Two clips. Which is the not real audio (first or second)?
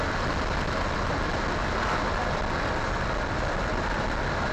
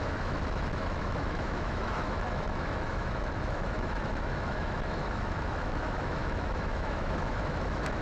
second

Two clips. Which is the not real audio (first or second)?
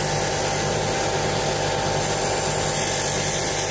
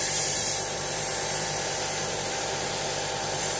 second